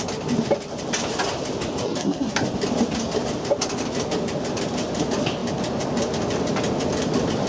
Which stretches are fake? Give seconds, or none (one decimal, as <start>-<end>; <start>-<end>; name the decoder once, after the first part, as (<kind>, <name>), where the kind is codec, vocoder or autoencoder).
1.8-2.4 (codec, SNAC)